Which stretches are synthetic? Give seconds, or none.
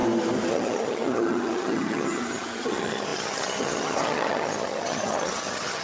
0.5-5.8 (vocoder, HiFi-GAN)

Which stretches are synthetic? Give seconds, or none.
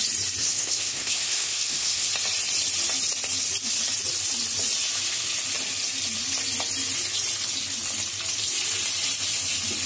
0.4-2.1 (codec, SNAC)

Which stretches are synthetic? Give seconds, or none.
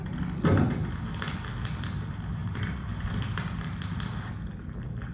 2.4-4.5 (vocoder, BigVGAN v2)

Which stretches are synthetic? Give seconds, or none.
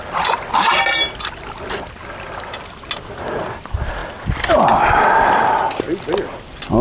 none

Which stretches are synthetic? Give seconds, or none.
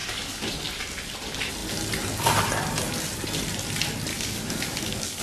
0.0-0.5 (codec, DAC); 4.1-5.2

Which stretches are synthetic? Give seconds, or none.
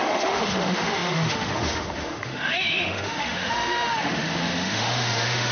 0.0-5.5 (autoencoder, DAC-VAE)